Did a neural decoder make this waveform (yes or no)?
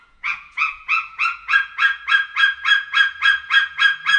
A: yes